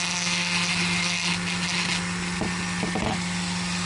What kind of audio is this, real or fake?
real